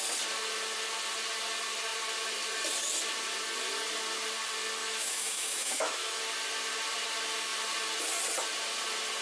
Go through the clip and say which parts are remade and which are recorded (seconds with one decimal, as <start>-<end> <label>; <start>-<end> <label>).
0.0-4.8 recorded; 4.8-6.2 remade; 6.2-9.2 recorded